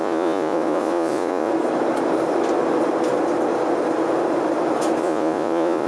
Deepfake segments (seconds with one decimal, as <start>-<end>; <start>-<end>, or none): 0.0-1.5; 5.0-5.9